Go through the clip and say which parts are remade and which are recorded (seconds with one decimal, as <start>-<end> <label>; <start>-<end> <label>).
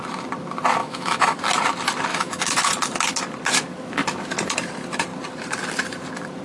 0.0-0.8 recorded; 0.8-1.4 remade; 1.4-2.1 recorded; 2.1-2.7 remade; 2.7-6.4 recorded